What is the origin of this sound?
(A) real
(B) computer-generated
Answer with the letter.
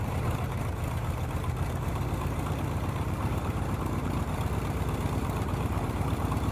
B